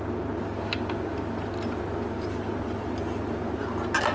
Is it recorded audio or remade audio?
recorded